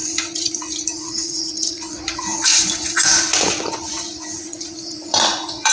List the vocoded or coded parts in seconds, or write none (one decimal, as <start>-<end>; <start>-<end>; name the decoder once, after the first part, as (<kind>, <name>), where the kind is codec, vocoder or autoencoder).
0.0-5.7 (vocoder, Vocos)